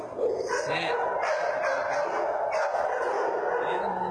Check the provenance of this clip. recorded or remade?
recorded